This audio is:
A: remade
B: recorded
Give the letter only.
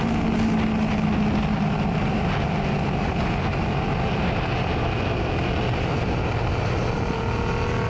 B